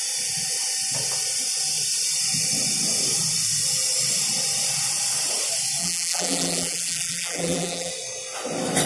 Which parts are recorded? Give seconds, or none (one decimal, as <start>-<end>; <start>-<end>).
0.0-5.8; 7.9-8.9